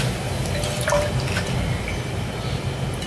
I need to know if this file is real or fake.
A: real